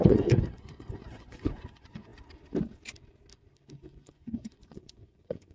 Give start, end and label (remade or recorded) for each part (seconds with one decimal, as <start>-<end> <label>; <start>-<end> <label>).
0.0-2.1 remade; 2.1-3.7 recorded; 3.7-5.5 remade